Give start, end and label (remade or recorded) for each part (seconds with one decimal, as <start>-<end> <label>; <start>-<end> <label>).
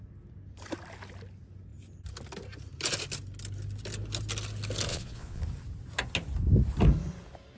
0.0-4.9 recorded; 4.9-5.4 remade; 5.4-7.6 recorded